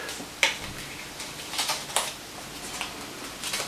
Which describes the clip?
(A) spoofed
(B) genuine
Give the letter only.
B